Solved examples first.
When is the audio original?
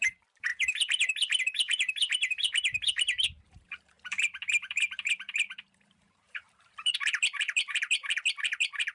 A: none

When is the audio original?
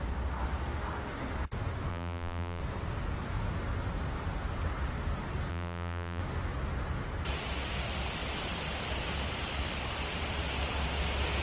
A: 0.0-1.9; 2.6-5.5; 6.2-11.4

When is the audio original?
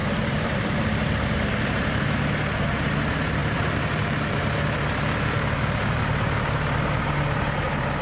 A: 2.0-3.4; 6.9-8.0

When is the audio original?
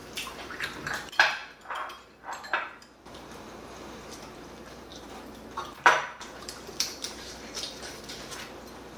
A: none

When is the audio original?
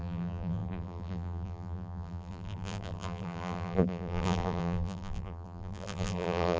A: none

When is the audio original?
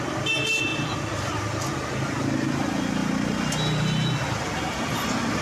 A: 0.0-0.7; 1.4-5.4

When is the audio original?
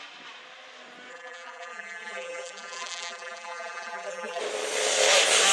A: 0.0-1.1; 4.4-5.5